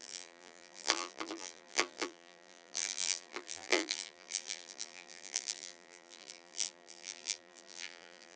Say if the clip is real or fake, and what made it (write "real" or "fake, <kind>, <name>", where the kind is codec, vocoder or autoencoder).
fake, vocoder, BigVGAN v2